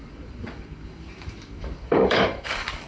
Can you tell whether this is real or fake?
fake